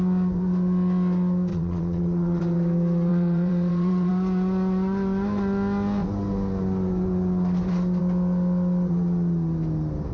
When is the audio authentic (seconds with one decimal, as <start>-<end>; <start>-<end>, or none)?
0.0-1.5; 2.4-3.1; 4.1-10.1